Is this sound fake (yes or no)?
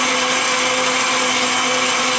no